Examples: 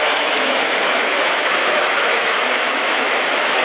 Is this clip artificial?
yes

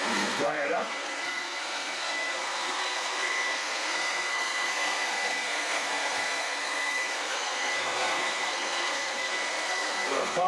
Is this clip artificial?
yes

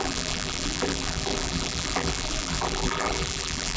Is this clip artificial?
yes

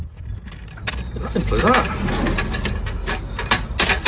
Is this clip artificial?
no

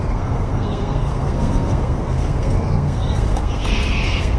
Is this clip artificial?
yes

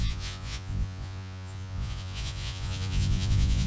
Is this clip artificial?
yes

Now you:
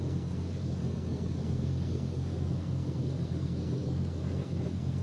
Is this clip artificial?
yes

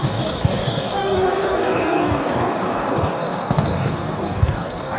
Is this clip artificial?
yes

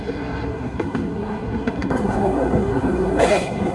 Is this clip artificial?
yes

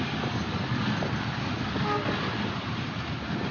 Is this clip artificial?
no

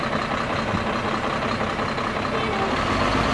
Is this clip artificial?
no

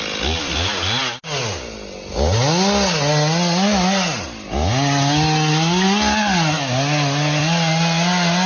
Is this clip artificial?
no